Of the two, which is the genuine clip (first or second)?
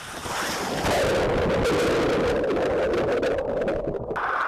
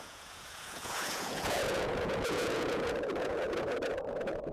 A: first